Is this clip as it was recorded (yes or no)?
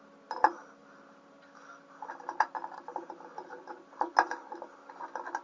yes